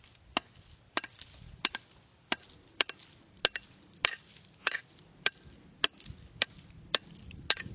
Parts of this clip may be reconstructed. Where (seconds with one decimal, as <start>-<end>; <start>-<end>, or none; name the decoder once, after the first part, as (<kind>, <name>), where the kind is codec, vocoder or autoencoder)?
none